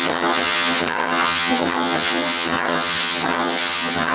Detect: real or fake fake